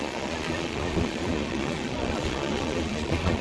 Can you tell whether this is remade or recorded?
remade